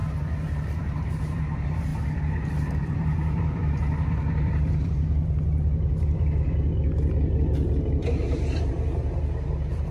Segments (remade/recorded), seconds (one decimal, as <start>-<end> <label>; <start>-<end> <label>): 0.0-1.9 remade; 1.9-2.5 recorded; 2.5-6.7 remade; 6.7-7.8 recorded; 7.8-9.9 remade